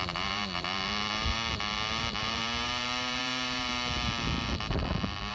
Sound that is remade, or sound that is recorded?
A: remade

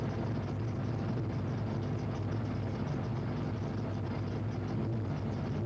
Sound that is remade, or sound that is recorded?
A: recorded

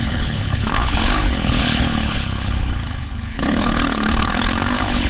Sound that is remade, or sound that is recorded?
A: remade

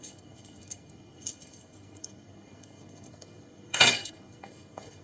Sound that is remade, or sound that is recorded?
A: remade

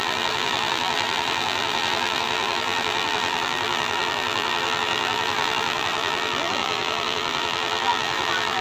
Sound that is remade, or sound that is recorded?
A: remade